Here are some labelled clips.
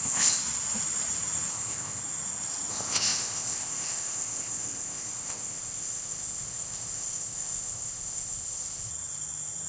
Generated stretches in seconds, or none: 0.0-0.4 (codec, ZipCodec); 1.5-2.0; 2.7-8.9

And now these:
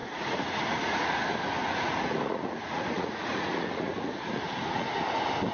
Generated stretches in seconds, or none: 0.0-1.2 (vocoder, Vocos); 1.6-4.9

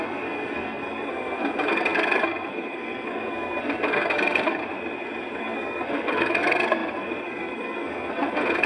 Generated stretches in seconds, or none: 0.0-4.6 (codec, SNAC); 5.4-8.7